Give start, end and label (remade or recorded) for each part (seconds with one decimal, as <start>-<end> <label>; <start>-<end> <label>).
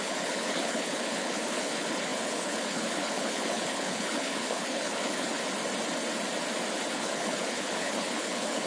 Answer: 0.0-5.3 remade; 5.3-6.9 recorded; 6.9-8.7 remade